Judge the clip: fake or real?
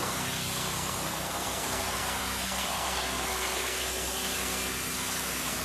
fake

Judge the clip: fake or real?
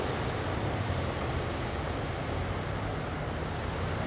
real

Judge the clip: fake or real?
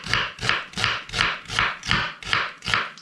real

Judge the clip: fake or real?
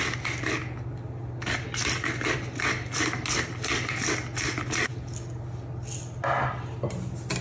real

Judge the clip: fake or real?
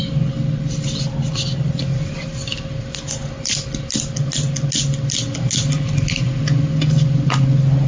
real